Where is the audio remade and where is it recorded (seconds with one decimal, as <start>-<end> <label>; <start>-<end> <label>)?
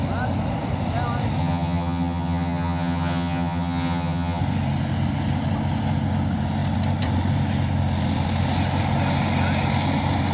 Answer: 0.0-1.4 recorded; 1.4-4.4 remade; 4.4-10.3 recorded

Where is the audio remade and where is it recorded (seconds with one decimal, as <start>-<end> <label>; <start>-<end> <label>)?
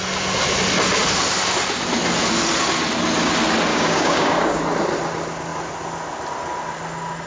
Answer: 0.0-3.7 recorded; 3.7-4.6 remade; 4.6-7.3 recorded